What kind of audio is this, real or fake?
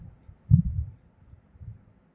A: real